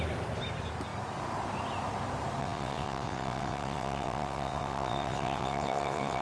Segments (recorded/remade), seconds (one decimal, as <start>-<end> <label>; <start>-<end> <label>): 0.0-2.4 recorded; 2.4-6.2 remade

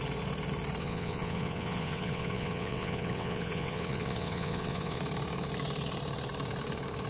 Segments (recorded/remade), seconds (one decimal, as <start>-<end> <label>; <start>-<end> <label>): 0.0-0.8 recorded; 0.8-5.0 remade; 5.0-7.1 recorded

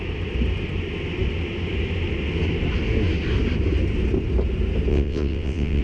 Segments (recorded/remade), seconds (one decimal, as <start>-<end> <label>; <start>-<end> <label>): 0.0-4.9 recorded; 4.9-5.8 remade

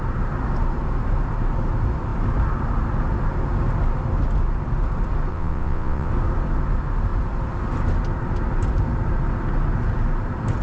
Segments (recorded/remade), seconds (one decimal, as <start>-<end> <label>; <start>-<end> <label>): 0.0-5.3 recorded; 5.3-6.1 remade; 6.1-10.6 recorded

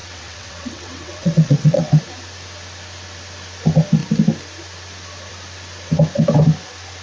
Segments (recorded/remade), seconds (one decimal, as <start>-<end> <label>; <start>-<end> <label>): 0.0-2.0 remade; 2.0-7.0 recorded